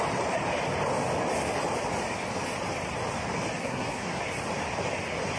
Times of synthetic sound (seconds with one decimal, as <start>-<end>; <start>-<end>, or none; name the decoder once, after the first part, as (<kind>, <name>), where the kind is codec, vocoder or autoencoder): 3.6-4.2 (codec, SNAC)